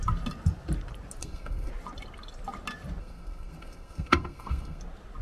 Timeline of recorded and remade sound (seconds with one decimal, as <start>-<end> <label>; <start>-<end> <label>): 0.0-1.2 recorded; 1.2-1.7 remade; 1.7-3.0 recorded; 3.0-4.8 remade; 4.8-5.2 recorded